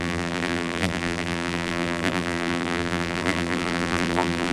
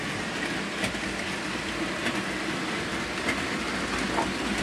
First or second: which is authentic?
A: second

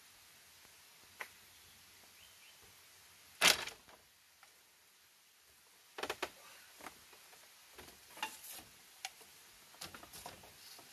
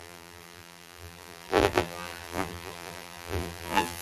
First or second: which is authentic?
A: first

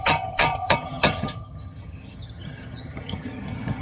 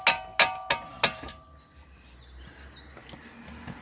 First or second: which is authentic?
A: second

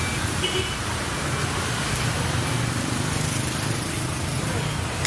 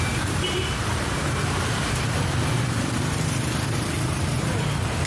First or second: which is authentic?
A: first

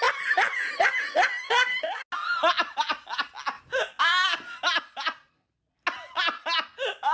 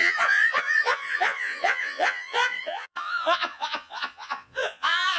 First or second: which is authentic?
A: first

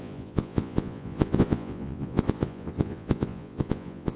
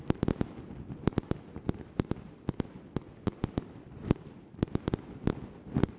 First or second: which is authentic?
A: second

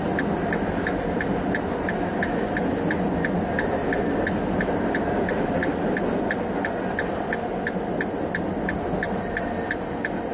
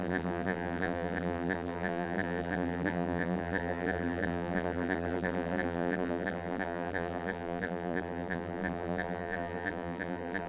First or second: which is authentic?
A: first